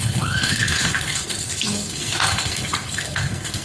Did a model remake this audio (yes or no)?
yes